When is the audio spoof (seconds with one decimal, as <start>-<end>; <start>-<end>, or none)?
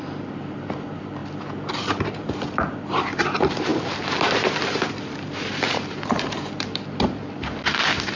0.0-1.2; 1.8-8.2